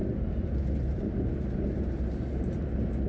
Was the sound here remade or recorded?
recorded